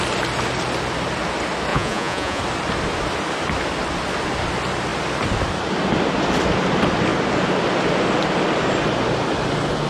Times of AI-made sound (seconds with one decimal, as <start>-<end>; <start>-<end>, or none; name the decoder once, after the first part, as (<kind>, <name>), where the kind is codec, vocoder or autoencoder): 1.7-2.4 (vocoder, Vocos)